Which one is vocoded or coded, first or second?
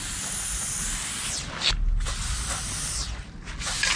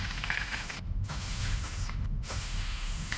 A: second